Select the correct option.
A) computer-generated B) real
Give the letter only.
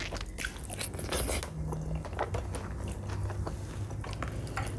B